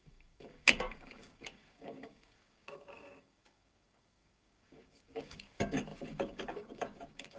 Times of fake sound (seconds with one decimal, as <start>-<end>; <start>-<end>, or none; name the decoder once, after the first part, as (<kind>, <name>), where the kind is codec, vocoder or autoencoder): 0.0-7.4 (codec, DAC)